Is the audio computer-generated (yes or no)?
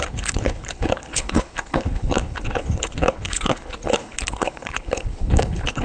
yes